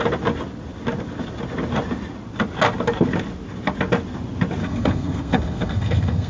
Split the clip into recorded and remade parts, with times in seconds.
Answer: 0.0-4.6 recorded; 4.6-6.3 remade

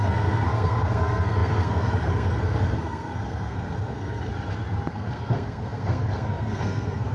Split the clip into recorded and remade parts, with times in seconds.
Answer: 0.0-4.3 remade; 4.3-4.9 recorded; 4.9-7.1 remade

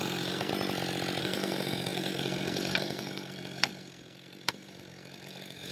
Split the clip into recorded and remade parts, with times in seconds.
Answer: 0.0-0.5 remade; 0.5-1.2 recorded; 1.2-5.7 remade

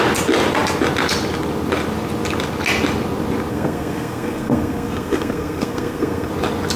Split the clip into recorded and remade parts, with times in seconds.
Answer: 0.0-3.5 recorded; 3.5-6.3 remade; 6.3-6.8 recorded

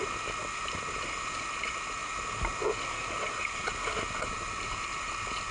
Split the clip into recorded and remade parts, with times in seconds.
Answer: 0.0-5.5 recorded

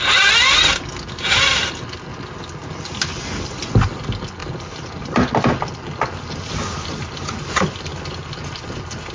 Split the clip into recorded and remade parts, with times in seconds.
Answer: 0.0-9.1 recorded

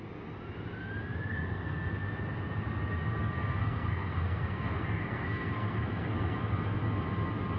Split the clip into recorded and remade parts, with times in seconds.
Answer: 0.0-1.3 recorded; 1.3-1.9 remade; 1.9-3.2 recorded; 3.2-6.4 remade; 6.4-7.6 recorded

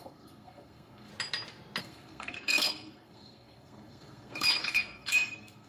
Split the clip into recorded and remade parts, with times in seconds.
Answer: 0.0-1.1 remade; 1.1-1.8 recorded; 1.8-5.7 remade